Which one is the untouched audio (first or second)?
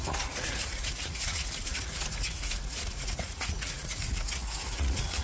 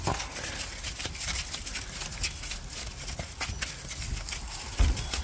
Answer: second